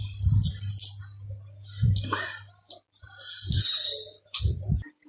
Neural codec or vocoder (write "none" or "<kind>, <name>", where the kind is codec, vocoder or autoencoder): none